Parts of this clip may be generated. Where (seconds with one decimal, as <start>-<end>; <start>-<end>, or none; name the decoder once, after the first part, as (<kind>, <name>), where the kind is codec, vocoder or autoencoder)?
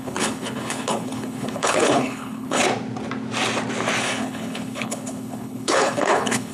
0.0-2.6 (codec, HILCodec); 4.0-6.5